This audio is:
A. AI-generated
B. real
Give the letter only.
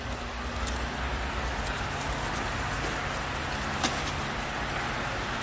B